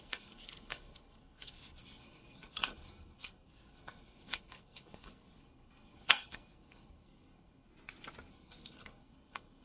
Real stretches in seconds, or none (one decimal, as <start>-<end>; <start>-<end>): 7.7-8.3